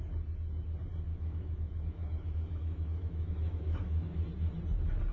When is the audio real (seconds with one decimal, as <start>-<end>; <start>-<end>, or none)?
0.0-1.1; 4.2-5.1